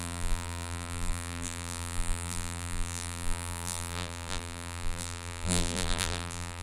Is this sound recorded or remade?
remade